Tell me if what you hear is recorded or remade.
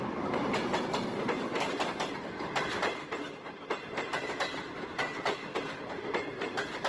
recorded